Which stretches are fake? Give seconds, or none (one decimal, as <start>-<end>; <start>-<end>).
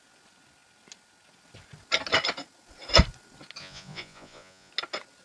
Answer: 3.6-4.7